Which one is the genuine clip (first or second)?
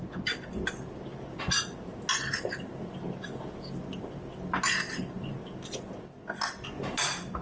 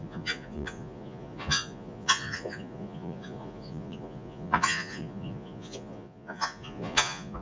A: first